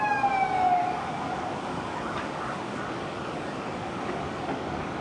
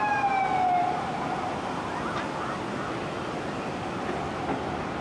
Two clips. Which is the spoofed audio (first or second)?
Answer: first